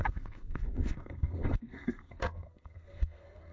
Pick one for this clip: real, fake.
fake